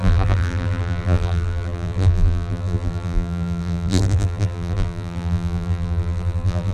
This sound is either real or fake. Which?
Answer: fake